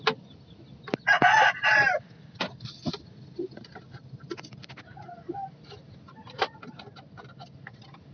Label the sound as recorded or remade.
recorded